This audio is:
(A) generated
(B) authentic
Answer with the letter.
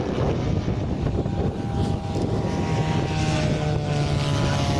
B